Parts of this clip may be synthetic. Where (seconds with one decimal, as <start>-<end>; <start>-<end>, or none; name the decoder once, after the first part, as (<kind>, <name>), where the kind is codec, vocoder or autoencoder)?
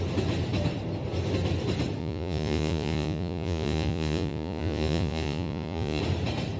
2.0-6.0 (vocoder, Vocos)